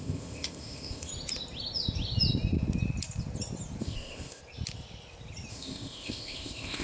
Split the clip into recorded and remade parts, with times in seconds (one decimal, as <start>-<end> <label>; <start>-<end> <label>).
0.0-1.1 remade; 1.1-3.8 recorded; 3.8-4.4 remade; 4.4-5.5 recorded; 5.5-6.8 remade